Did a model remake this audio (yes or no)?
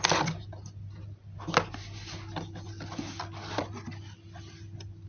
no